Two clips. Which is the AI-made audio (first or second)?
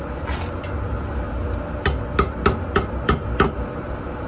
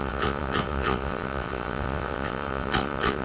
second